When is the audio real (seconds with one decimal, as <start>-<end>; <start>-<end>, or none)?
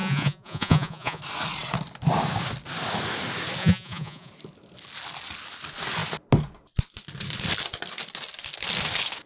1.2-3.6; 4.3-9.3